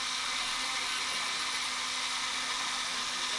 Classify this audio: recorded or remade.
recorded